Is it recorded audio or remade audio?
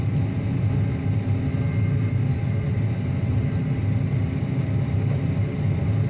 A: recorded